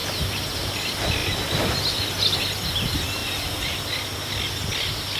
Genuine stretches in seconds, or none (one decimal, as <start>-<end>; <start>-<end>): 0.0-3.2; 3.8-5.2